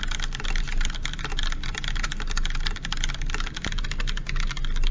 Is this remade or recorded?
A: recorded